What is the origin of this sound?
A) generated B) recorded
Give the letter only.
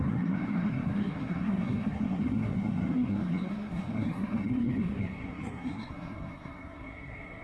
A